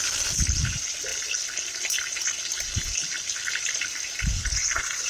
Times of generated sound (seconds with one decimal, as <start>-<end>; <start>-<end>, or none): none